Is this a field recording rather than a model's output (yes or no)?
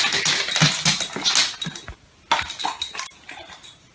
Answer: yes